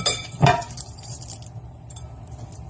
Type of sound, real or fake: real